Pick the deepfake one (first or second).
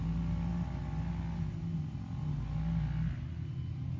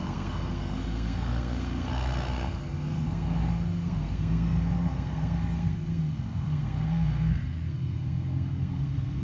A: second